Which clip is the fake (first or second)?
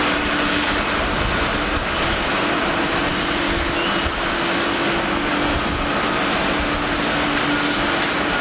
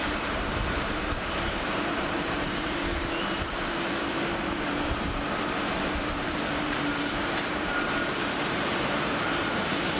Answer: second